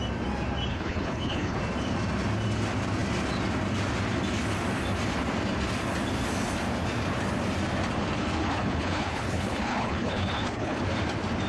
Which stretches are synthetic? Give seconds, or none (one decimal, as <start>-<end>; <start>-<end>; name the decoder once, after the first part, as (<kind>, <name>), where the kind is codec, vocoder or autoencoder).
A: 0.7-1.6 (codec, HILCodec); 8.4-10.8